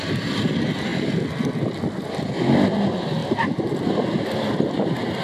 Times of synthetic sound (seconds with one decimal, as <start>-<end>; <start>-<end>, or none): none